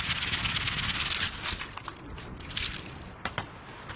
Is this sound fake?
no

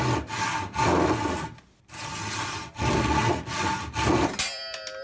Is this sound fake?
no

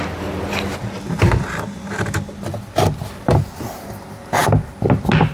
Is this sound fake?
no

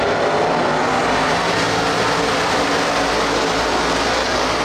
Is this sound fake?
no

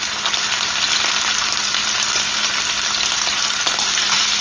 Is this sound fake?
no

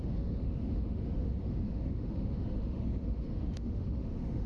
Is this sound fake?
yes